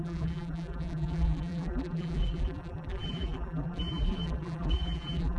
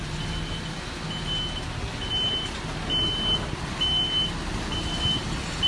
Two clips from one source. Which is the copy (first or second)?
first